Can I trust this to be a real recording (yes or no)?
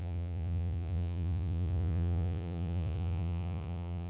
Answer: no